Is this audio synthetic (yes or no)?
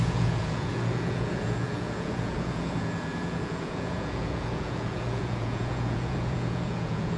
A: yes